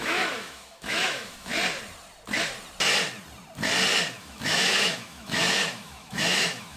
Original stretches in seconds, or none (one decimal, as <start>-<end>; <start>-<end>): 1.5-4.2

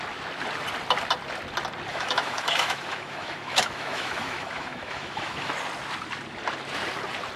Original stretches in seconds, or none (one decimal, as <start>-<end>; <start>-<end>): 0.0-1.9; 5.5-7.4

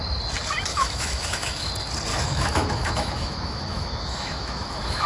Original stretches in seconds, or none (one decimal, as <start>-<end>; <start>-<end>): 0.0-0.7; 1.7-2.1

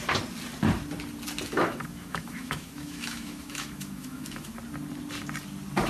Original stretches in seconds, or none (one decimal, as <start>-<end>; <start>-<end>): 0.0-1.6; 4.5-5.9

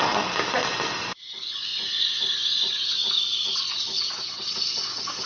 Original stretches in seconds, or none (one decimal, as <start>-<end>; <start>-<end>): 0.0-5.3

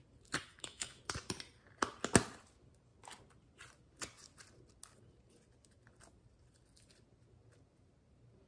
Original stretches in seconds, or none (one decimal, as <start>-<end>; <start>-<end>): 0.0-0.5; 1.0-8.5

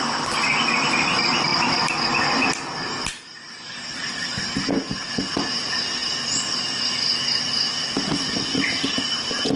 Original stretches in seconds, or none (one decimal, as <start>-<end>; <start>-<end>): 0.0-9.6

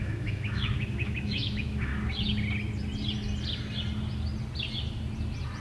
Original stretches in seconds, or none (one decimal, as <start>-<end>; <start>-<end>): 1.9-5.6